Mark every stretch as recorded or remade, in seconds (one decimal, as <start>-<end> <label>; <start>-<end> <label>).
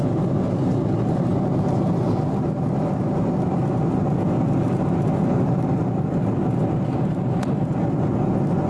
0.0-8.7 recorded